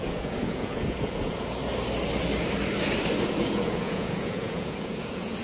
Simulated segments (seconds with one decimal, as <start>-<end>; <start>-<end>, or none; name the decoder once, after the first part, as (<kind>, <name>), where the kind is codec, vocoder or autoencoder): 0.0-1.6 (vocoder, Vocos); 3.2-5.4